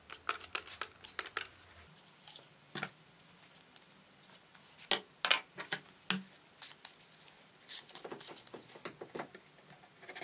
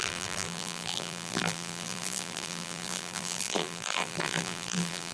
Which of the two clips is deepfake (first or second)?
second